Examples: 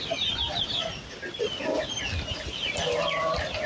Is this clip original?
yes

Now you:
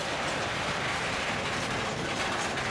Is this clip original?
yes